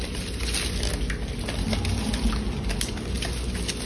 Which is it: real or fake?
real